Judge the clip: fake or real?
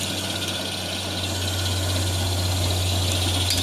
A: real